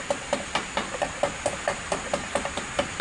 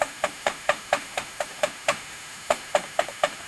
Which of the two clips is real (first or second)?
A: first